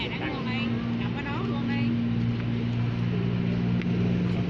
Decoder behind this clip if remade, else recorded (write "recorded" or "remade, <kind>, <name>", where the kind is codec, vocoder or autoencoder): recorded